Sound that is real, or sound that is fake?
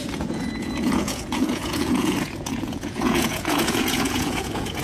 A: fake